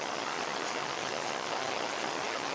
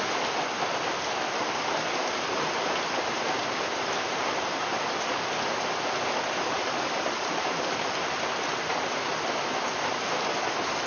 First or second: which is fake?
first